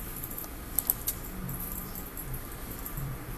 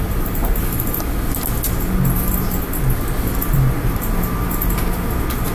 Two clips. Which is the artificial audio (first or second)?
first